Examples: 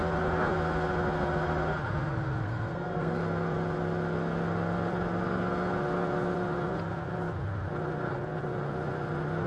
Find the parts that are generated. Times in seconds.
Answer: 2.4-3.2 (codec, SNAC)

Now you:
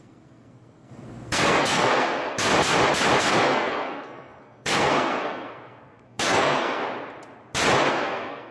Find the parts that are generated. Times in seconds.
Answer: 0.0-2.5 (codec, SNAC); 3.2-6.8; 7.9-8.5

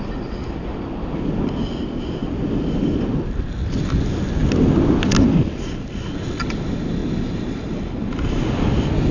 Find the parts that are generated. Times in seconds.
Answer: none

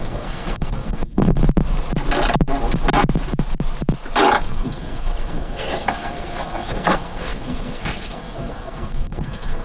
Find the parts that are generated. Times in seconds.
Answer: 0.0-1.4 (codec, SNAC); 4.4-9.6

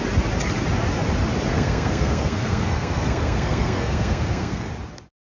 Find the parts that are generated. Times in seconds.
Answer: 1.5-4.7 (codec, SNAC)

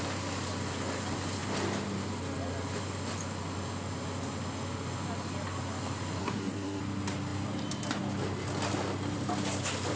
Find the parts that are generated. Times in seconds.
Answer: 6.2-6.8 (codec, SNAC)

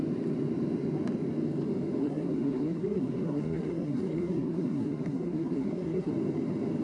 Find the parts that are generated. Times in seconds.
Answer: 2.0-6.1 (codec, SNAC)

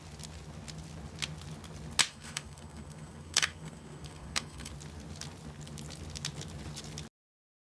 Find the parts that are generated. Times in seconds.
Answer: 2.1-4.7 (codec, SNAC)